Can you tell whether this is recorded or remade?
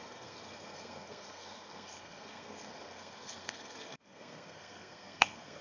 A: remade